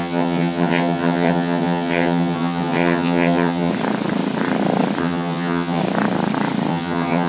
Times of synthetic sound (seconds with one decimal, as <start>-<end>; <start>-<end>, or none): 0.0-3.7; 5.0-5.8; 6.7-7.3